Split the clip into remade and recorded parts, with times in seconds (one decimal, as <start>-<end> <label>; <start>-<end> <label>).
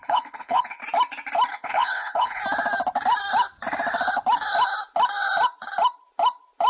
0.0-0.8 remade; 0.8-1.5 recorded; 1.5-2.4 remade; 2.4-6.7 recorded